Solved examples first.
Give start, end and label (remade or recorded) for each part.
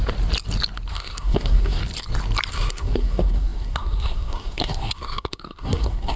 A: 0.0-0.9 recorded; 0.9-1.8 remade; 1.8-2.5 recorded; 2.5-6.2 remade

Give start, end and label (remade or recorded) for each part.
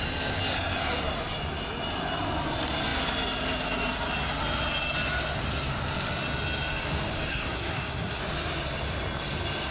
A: 0.0-7.3 recorded; 7.3-8.2 remade; 8.2-9.7 recorded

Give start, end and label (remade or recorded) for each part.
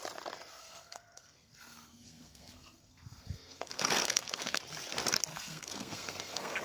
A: 0.0-0.6 recorded; 0.6-4.6 remade; 4.6-5.3 recorded; 5.3-6.6 remade